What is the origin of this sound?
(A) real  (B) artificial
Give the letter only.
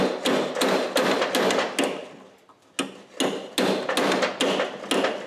A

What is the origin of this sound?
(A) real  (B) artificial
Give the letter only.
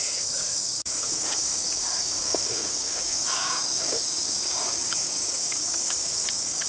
B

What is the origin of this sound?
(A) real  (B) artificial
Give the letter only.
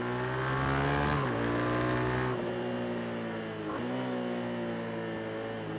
A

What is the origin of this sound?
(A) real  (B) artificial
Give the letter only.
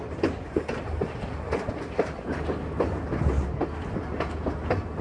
A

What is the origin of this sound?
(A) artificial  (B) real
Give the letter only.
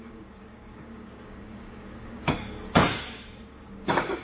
A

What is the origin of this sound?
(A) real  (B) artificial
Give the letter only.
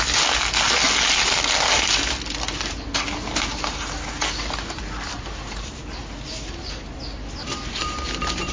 A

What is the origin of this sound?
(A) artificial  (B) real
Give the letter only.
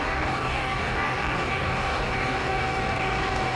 A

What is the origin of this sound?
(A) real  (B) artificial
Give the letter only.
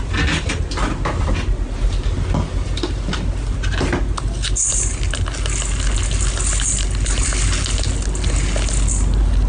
A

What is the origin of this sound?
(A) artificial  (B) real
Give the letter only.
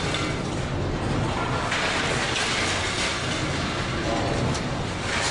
B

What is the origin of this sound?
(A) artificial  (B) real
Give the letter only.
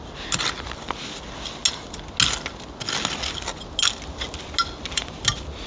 B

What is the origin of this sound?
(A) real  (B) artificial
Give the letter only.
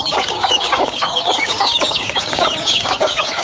B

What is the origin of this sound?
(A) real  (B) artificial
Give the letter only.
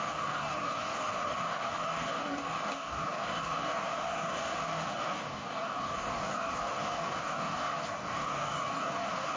B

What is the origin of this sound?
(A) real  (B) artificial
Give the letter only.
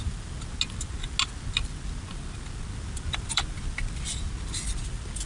A